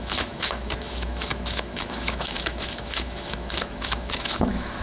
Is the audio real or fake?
fake